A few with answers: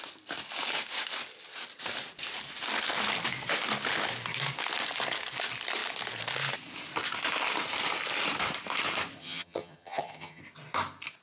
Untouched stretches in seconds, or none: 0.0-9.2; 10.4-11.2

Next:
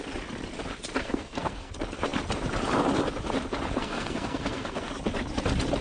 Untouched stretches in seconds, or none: 0.0-1.0; 1.7-3.8; 4.9-5.8

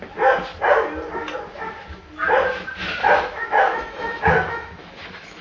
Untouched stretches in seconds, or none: 0.0-3.0

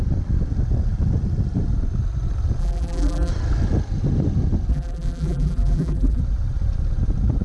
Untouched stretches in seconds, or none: 0.0-2.6; 3.3-4.7; 6.2-7.4

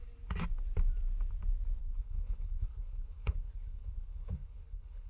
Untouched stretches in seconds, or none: 0.0-1.8

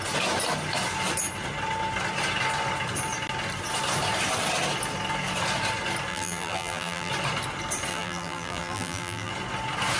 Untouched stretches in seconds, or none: 0.0-6.1; 7.1-7.9; 9.3-10.0